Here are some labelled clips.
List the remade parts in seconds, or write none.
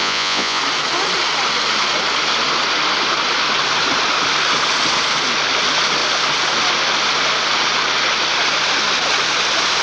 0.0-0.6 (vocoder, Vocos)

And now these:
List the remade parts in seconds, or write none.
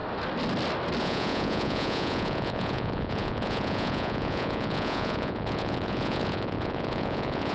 1.0-7.5 (vocoder, Vocos)